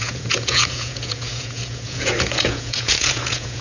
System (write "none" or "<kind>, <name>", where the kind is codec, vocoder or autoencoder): vocoder, Vocos